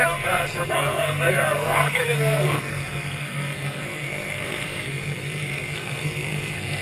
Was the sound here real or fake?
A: fake